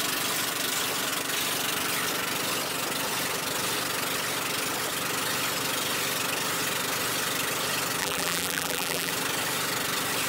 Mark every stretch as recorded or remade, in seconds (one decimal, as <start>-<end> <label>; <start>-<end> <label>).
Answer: 0.0-8.0 recorded; 8.0-9.1 remade; 9.1-10.3 recorded